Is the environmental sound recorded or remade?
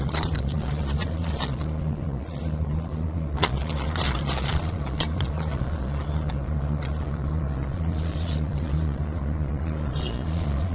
remade